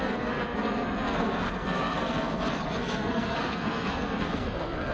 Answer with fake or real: fake